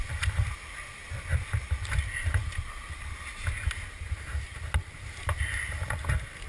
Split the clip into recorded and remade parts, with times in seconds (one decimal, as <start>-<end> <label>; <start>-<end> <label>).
0.0-6.5 recorded